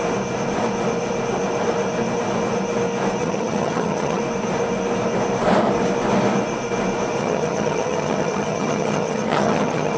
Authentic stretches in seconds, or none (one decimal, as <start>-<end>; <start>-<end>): 0.0-3.2; 4.2-7.2

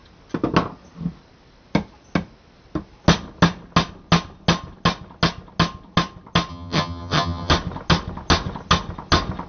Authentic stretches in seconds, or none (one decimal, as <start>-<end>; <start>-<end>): 0.0-6.5; 7.5-9.5

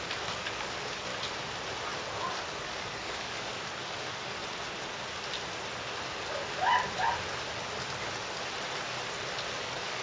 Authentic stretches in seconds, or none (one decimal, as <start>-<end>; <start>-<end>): 1.1-2.6; 4.4-9.6

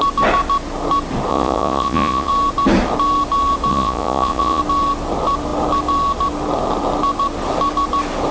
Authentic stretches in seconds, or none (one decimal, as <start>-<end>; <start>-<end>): 0.0-1.3; 2.3-3.7; 4.6-8.3

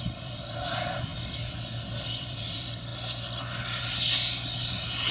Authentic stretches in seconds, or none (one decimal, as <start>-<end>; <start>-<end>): 1.1-2.2; 2.9-4.6

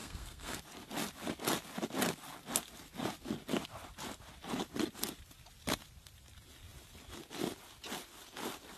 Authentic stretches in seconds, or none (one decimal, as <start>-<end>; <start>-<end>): 0.6-8.8

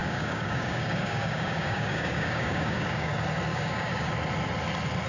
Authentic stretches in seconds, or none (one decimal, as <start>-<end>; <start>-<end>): 3.1-3.5; 4.1-5.1

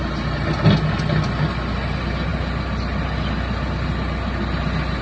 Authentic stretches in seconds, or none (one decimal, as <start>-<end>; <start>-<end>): 0.0-5.0